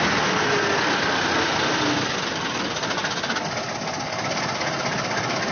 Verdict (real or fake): real